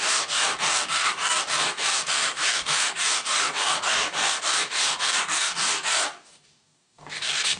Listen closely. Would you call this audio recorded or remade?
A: remade